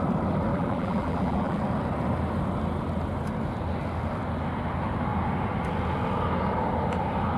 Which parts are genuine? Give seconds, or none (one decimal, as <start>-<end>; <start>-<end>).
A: 0.0-0.5; 1.6-7.4